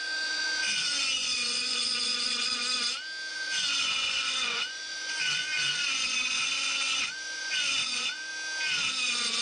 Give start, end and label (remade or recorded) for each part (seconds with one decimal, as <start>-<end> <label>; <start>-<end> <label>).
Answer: 0.0-2.6 remade; 2.6-3.3 recorded; 3.3-8.3 remade; 8.3-9.0 recorded; 9.0-9.4 remade

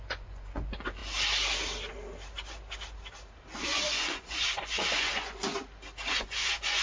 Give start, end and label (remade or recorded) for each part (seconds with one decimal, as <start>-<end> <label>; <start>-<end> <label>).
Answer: 0.0-1.0 remade; 1.0-3.6 recorded; 3.6-5.5 remade; 5.5-6.1 recorded; 6.1-6.8 remade

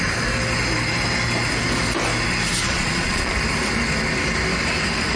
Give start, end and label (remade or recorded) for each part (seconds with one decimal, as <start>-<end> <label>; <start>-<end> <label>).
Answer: 0.0-2.6 recorded; 2.6-3.3 remade; 3.3-5.2 recorded

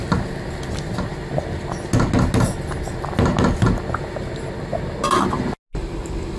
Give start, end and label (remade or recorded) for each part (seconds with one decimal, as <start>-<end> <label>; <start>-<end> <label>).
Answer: 0.0-6.4 recorded

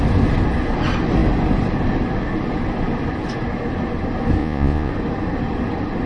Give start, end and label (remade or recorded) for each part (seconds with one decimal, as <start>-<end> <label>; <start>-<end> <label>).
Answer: 0.0-4.4 recorded; 4.4-4.9 remade; 4.9-6.1 recorded

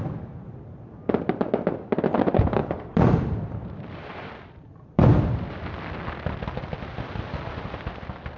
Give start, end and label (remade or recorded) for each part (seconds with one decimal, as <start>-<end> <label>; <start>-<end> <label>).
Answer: 0.0-2.6 recorded; 2.6-7.5 remade; 7.5-8.4 recorded